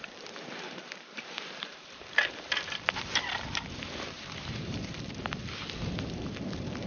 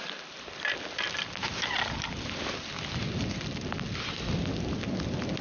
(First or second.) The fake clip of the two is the first